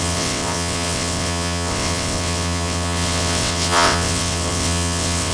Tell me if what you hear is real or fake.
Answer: fake